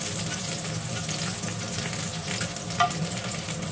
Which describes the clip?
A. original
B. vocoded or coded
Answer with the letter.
A